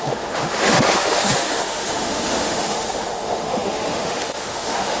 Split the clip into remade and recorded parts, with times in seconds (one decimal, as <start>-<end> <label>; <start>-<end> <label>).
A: 0.0-5.0 remade